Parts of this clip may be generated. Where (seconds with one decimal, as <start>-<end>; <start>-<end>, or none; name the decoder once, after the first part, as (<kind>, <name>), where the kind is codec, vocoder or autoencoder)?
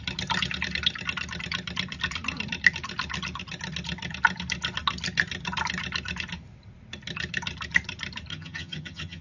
8.3-9.2 (vocoder, HiFi-GAN)